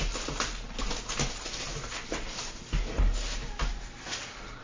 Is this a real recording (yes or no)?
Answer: yes